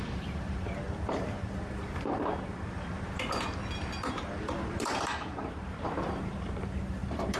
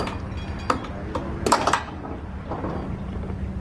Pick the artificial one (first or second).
first